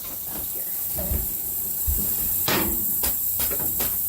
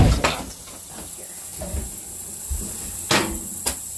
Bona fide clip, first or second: second